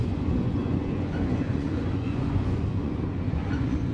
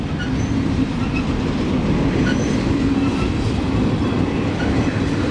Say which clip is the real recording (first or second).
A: second